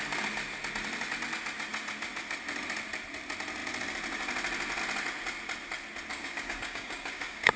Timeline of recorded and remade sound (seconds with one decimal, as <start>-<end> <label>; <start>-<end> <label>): 0.0-6.1 recorded; 6.1-7.6 remade